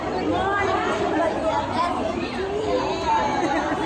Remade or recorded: remade